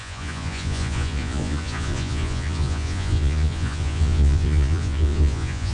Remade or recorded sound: remade